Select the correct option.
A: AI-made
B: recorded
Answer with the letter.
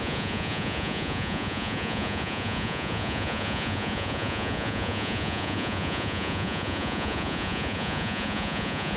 A